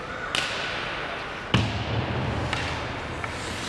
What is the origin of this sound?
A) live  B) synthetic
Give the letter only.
A